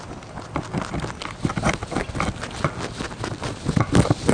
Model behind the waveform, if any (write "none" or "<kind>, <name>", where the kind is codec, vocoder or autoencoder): none